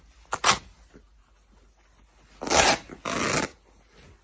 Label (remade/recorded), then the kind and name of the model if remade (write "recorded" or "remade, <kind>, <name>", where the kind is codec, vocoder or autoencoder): recorded